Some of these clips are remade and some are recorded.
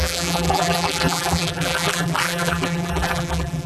remade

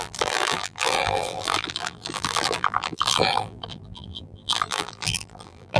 remade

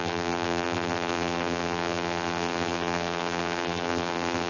remade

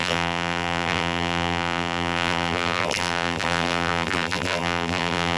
remade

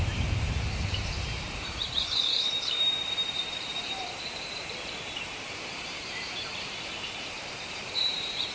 remade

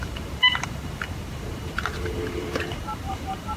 remade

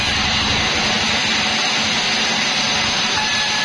recorded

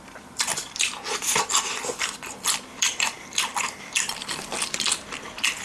remade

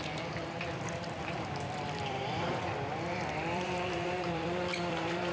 remade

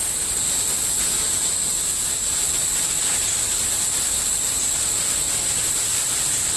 recorded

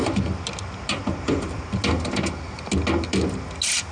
recorded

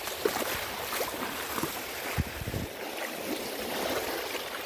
remade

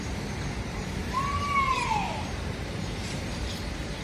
remade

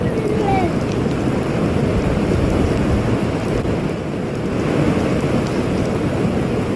recorded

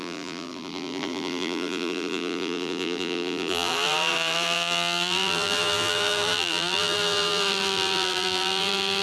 remade